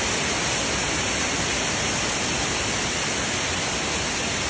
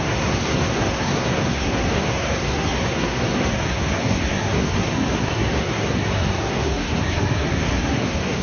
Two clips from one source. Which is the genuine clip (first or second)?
first